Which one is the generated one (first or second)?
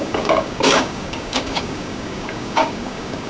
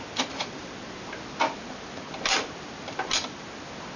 first